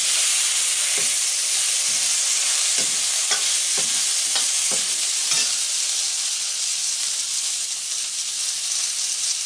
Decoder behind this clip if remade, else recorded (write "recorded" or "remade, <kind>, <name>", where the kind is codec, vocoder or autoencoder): remade, vocoder, BigVGAN v2